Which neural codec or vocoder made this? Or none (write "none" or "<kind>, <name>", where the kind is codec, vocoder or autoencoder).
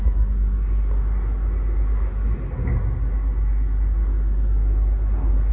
none